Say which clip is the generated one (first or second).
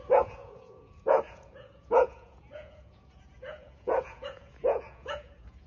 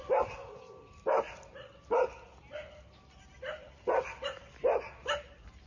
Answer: first